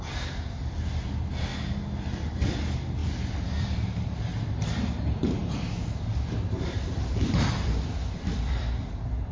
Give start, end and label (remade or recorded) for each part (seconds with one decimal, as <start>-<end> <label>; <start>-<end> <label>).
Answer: 0.0-1.5 remade; 1.5-2.2 recorded; 2.2-9.3 remade